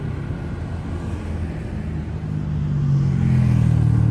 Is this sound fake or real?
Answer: real